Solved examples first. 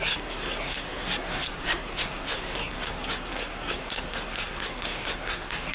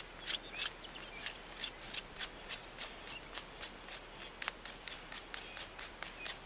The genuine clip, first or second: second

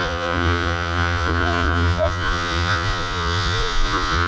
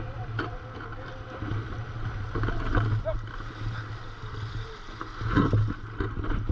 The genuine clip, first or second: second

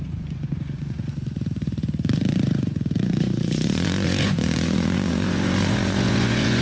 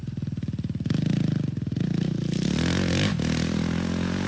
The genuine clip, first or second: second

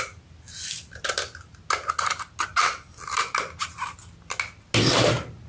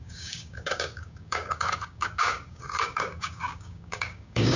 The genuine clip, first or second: first